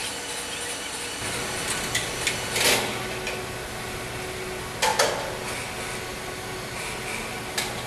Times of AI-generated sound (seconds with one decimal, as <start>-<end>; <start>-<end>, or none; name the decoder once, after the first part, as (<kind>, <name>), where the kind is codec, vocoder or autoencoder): none